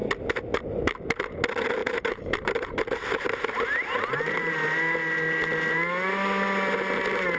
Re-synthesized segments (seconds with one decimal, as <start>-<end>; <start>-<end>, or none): 1.8-4.5